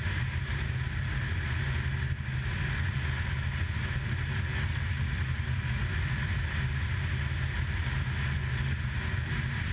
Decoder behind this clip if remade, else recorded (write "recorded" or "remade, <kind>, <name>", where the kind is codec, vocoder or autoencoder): recorded